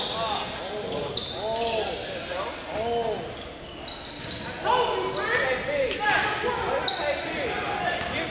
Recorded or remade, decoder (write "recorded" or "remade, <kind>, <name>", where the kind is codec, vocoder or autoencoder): recorded